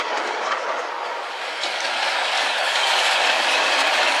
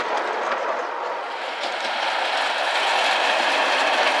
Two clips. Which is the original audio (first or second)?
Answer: second